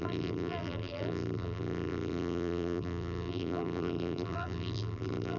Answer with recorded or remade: remade